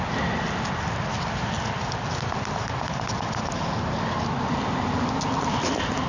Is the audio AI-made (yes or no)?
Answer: no